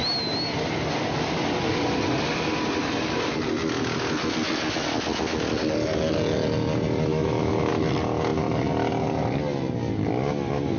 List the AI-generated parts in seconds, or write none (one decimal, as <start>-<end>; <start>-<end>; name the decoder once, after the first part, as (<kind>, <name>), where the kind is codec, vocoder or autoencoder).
7.1-7.7 (autoencoder, DAC-VAE)